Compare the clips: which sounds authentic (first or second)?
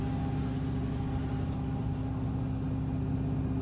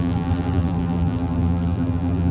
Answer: first